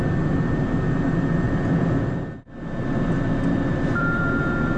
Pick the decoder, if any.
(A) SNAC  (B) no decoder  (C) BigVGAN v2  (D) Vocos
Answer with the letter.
C